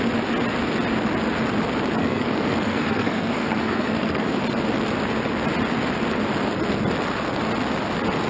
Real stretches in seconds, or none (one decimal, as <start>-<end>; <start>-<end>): 0.0-2.0; 4.4-8.3